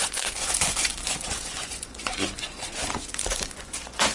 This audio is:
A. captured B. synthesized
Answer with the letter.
B